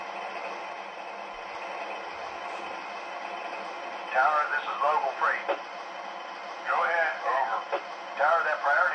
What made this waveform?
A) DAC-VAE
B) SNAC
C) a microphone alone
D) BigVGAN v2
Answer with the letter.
C